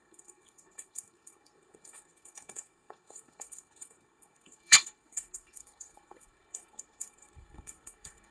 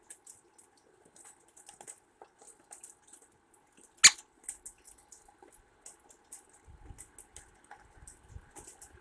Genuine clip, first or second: second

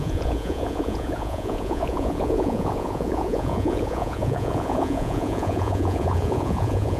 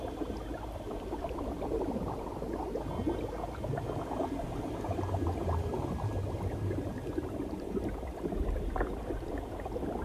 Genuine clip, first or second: second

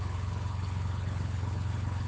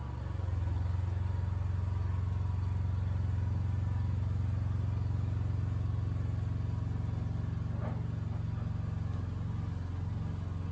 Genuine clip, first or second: second